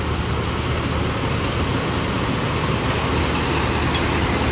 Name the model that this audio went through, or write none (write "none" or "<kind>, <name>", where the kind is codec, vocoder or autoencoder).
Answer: none